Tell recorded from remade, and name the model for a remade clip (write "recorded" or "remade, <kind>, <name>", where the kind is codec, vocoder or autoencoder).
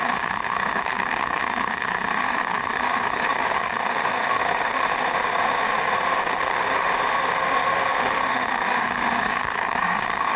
remade, autoencoder, DAC-VAE